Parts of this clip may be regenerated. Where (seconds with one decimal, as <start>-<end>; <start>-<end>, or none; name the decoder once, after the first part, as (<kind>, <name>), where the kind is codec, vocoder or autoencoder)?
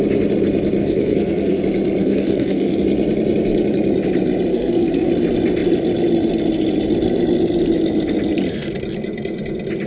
0.8-1.6 (codec, SNAC); 2.0-2.8; 4.5-5.1